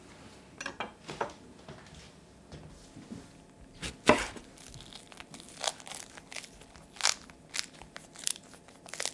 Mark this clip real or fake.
real